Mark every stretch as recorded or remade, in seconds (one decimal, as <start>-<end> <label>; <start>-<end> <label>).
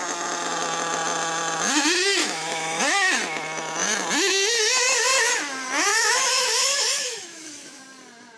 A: 0.0-2.2 recorded; 2.2-2.8 remade; 2.8-5.9 recorded; 5.9-7.8 remade; 7.8-8.4 recorded